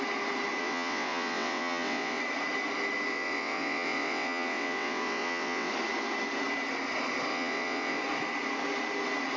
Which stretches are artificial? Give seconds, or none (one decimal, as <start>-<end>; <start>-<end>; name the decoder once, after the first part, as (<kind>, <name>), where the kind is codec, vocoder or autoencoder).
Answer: 0.6-2.2 (vocoder, WaveNeXt); 3.1-5.7; 7.3-8.0